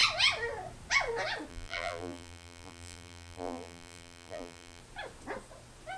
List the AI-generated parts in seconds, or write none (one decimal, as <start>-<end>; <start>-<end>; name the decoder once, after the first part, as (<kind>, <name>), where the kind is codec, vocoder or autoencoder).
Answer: 1.5-4.8 (vocoder, BigVGAN v2)

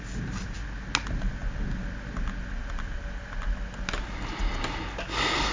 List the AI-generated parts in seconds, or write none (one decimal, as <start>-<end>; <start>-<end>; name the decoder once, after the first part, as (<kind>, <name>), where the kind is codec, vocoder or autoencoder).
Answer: none

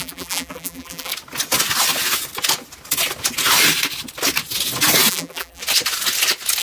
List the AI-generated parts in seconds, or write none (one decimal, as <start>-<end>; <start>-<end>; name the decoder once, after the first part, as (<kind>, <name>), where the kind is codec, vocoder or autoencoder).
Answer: 0.0-1.1 (vocoder, BigVGAN v2); 5.1-5.6

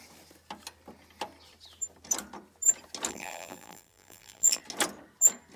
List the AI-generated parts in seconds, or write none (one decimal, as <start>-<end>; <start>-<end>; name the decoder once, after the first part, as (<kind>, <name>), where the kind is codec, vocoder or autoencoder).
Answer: 3.1-4.6 (vocoder, BigVGAN v2)

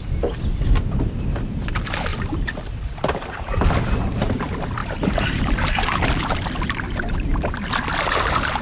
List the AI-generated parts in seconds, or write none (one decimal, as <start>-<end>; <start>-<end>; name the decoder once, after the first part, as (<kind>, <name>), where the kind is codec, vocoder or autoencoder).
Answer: 2.1-3.7 (vocoder, BigVGAN v2); 4.8-6.1

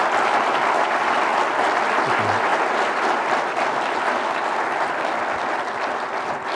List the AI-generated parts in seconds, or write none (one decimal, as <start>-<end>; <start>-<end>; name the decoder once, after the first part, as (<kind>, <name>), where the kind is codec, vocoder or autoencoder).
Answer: none

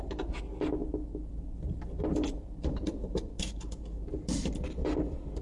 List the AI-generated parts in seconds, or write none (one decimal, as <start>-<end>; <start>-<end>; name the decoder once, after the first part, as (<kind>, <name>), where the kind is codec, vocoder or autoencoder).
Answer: 0.8-3.4 (vocoder, BigVGAN v2)